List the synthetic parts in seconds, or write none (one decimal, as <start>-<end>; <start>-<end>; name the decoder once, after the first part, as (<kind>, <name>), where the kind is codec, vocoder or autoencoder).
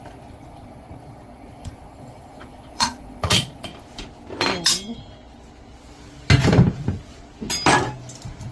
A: 0.0-3.7 (vocoder, Vocos)